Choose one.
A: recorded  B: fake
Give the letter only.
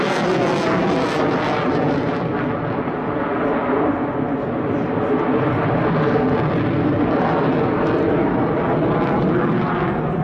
A